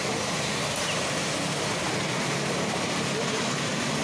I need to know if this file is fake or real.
real